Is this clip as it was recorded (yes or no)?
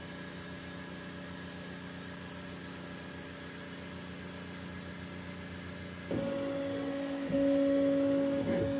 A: yes